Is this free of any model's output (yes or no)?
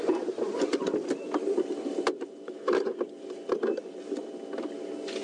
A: yes